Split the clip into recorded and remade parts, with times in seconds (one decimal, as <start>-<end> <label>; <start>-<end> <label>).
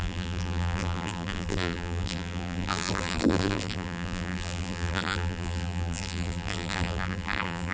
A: 0.0-7.7 remade